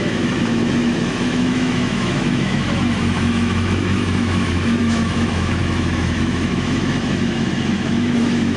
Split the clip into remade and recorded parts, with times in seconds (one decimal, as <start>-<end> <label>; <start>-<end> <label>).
0.0-8.6 remade